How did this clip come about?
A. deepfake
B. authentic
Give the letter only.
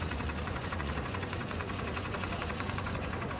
A